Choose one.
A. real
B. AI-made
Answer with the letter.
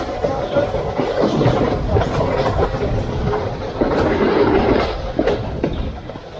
A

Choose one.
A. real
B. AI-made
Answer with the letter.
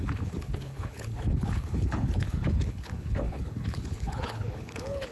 B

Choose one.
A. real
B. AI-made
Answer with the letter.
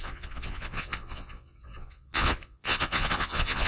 B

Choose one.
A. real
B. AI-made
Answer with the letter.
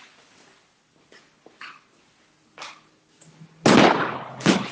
A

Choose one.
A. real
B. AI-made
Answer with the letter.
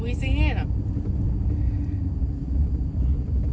A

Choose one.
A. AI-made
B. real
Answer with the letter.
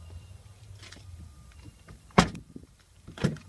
A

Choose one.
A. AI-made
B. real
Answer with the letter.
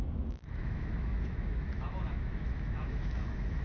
A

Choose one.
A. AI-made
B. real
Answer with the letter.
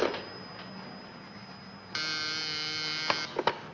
B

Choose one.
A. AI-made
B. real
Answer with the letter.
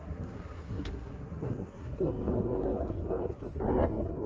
A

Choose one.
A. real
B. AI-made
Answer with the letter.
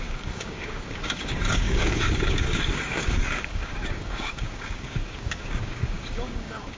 B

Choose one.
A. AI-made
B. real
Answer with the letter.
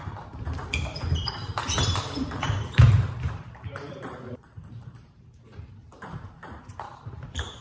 A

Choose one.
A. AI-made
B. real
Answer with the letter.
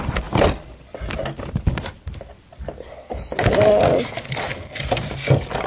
B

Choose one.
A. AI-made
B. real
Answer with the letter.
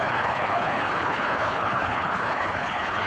A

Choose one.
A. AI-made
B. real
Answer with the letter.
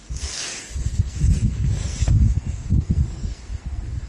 A